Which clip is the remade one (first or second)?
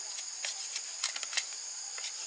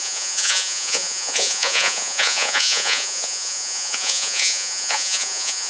second